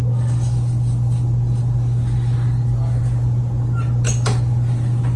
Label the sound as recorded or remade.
recorded